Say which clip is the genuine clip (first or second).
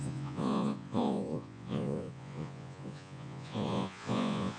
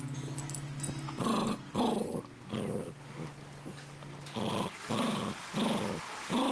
second